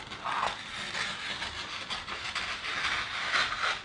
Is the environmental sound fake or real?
real